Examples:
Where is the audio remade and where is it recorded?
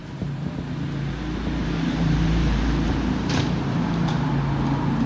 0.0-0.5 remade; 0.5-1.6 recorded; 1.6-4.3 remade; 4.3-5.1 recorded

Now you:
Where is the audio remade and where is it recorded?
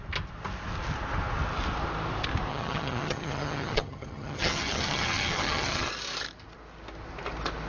0.0-2.5 recorded; 2.5-5.9 remade; 5.9-7.7 recorded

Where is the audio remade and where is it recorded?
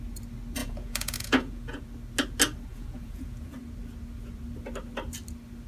0.0-0.6 recorded; 0.6-1.8 remade; 1.8-2.7 recorded; 2.7-3.5 remade; 3.5-5.7 recorded